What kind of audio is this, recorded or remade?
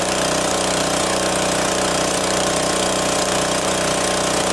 remade